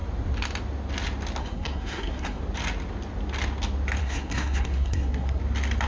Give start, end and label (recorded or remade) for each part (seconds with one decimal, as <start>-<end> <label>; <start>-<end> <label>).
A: 0.0-1.4 recorded; 1.4-2.4 remade; 2.4-4.0 recorded; 4.0-5.4 remade; 5.4-5.9 recorded